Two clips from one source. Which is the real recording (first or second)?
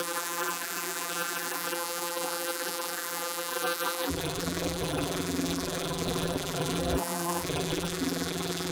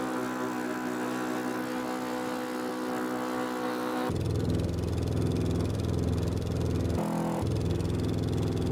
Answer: second